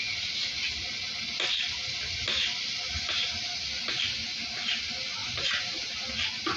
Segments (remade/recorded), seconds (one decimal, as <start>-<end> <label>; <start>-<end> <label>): 0.0-5.2 recorded; 5.2-5.8 remade; 5.8-6.6 recorded